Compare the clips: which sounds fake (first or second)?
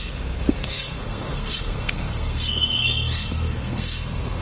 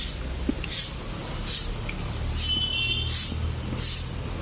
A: first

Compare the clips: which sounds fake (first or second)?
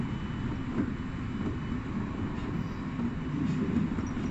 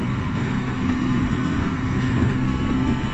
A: second